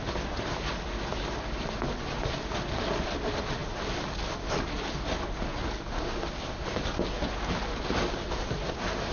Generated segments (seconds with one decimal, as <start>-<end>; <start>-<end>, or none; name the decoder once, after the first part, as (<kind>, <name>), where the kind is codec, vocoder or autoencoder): none